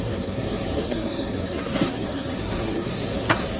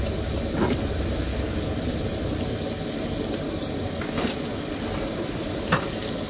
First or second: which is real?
second